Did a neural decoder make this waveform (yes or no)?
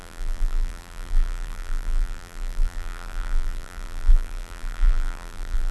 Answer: yes